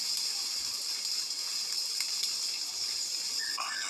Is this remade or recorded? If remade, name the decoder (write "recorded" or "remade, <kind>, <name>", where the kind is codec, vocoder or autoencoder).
recorded